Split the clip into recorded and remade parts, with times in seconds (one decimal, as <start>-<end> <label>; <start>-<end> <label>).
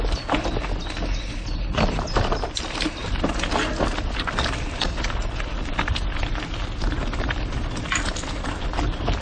0.0-9.2 recorded